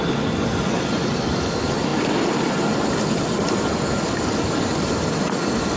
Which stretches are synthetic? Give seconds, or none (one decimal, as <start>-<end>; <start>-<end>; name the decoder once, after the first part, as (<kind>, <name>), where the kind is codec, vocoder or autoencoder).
1.9-5.8 (vocoder, BigVGAN v2)